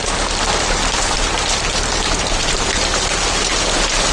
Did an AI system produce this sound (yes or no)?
no